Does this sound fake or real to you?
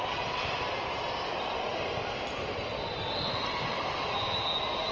real